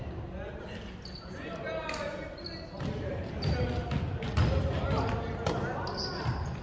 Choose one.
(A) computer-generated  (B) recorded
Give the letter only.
B